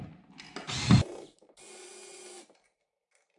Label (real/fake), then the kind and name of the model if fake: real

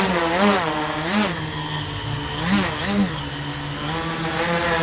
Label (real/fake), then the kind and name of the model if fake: real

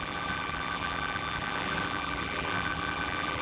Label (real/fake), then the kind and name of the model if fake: fake, vocoder, BigVGAN v2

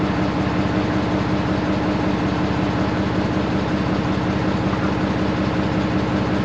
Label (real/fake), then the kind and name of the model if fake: real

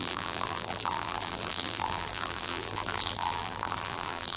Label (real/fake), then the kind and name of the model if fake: fake, vocoder, BigVGAN v2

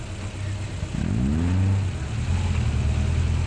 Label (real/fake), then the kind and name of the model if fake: real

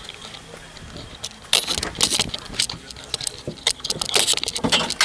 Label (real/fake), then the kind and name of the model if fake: real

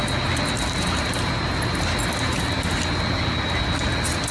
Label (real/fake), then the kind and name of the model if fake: real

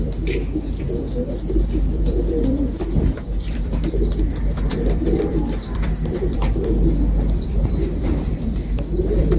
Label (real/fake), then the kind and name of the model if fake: fake, vocoder, BigVGAN v2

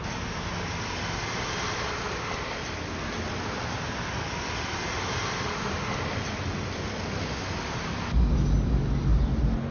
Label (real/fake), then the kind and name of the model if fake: real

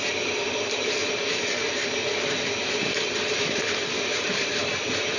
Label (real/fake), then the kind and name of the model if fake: fake, vocoder, BigVGAN v2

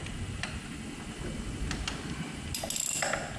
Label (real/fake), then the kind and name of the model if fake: real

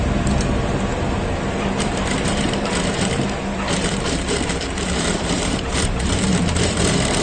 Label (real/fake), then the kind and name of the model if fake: fake, vocoder, BigVGAN v2